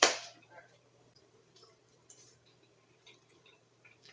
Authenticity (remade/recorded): remade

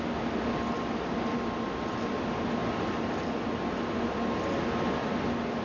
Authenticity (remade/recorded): recorded